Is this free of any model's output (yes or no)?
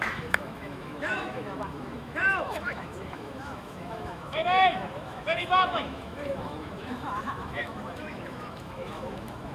no